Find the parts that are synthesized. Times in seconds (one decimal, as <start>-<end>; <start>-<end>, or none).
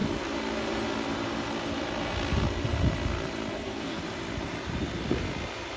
3.5-4.0